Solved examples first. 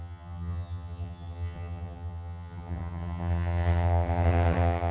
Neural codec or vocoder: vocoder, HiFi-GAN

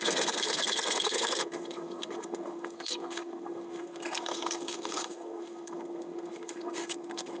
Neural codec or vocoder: codec, SNAC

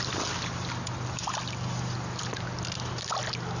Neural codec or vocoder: none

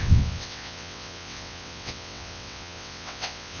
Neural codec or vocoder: vocoder, WaveNeXt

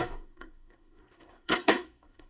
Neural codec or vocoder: codec, SNAC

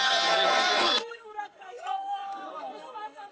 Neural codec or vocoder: codec, SNAC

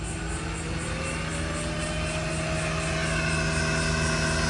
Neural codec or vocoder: none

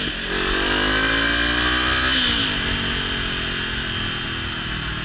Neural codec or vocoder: none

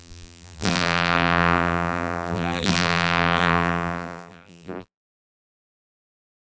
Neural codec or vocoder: vocoder, BigVGAN v2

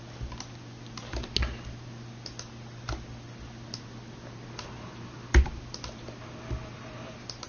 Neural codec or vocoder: none